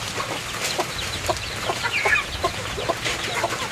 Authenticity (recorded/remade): remade